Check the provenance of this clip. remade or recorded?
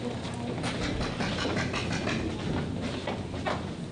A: recorded